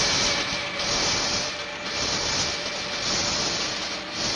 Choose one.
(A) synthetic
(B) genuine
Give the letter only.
B